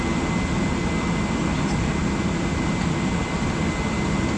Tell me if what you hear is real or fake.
real